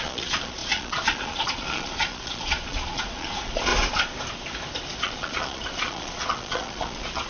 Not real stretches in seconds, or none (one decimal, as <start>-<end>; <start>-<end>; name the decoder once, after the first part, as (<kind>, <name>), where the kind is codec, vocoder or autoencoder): 0.0-3.7 (vocoder, Vocos); 5.0-7.3